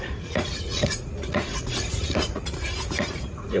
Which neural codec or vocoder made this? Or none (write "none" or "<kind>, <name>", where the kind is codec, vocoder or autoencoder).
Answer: vocoder, Vocos